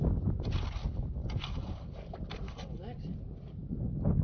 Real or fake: real